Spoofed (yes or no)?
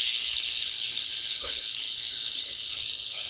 yes